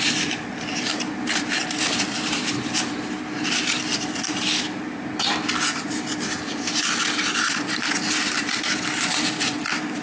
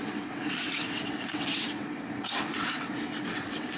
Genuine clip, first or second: first